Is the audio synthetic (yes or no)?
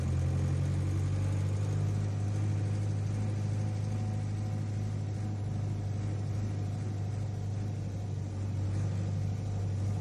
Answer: no